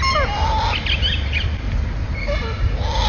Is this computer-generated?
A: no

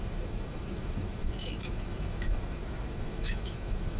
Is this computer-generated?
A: yes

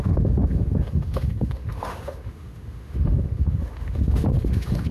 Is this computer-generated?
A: yes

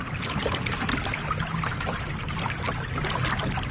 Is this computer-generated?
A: no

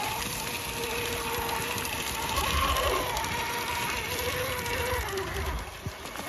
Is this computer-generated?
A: no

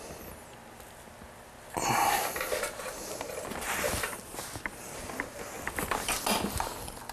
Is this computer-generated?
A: no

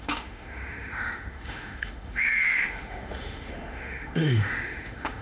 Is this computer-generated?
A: yes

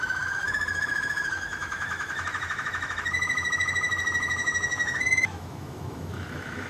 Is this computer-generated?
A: yes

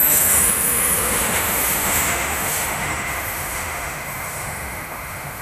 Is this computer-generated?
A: yes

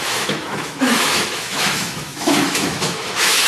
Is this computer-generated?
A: yes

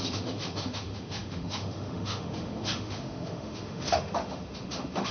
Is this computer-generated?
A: yes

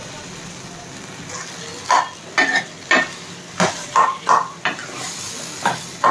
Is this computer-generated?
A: no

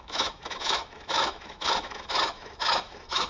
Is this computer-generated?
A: yes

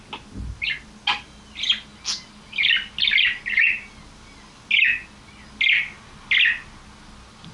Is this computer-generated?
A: no